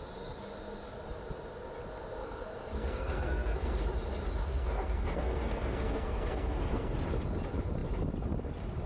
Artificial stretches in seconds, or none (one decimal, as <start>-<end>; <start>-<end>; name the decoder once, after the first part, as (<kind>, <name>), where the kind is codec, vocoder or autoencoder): 2.2-3.8 (codec, SNAC); 4.4-6.9